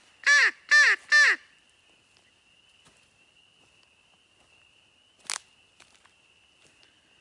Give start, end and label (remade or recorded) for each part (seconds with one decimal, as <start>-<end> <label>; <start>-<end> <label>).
0.0-7.2 recorded